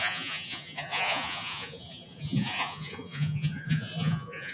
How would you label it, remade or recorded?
remade